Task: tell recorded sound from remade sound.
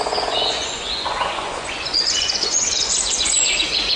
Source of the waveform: remade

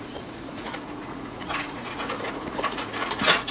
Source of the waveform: remade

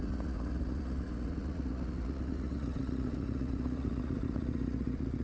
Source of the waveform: remade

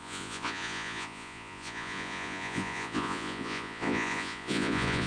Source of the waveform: remade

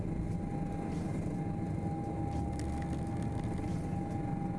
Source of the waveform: recorded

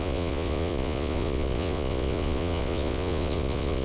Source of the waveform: remade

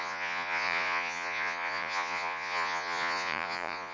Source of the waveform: remade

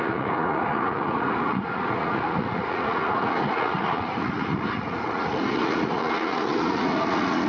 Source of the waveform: remade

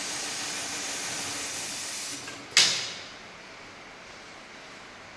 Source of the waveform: recorded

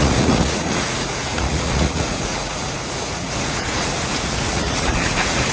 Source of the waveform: remade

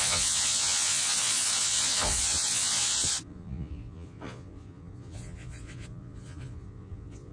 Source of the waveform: remade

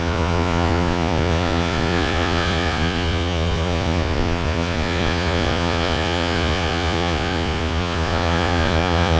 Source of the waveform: remade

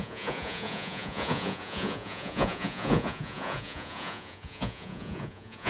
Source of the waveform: remade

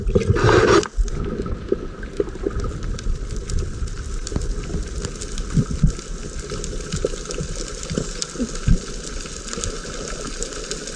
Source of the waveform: recorded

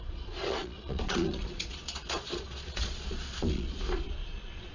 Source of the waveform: remade